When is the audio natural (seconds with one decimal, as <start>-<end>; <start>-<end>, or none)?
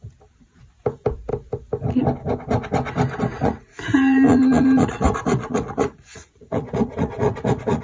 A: 0.0-3.3